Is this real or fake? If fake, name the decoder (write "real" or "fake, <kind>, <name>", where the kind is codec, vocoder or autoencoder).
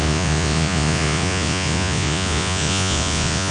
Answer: fake, vocoder, Vocos